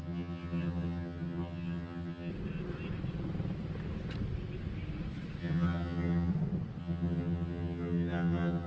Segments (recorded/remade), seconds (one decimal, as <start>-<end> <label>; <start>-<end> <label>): 0.0-2.3 remade; 2.3-5.4 recorded; 5.4-6.3 remade; 6.3-6.8 recorded; 6.8-8.7 remade

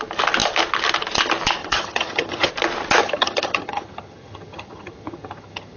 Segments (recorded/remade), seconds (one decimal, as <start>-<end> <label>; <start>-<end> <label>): 0.0-1.6 recorded; 1.6-2.5 remade; 2.5-3.0 recorded; 3.0-5.8 remade

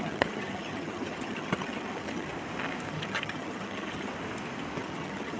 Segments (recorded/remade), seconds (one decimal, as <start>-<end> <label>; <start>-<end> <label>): 0.0-2.3 remade; 2.3-2.9 recorded; 2.9-4.1 remade; 4.1-4.8 recorded; 4.8-5.4 remade